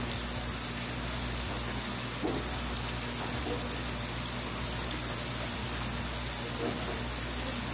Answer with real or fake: real